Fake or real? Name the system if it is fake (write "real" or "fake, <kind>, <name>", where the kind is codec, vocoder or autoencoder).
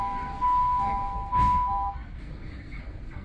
fake, codec, SNAC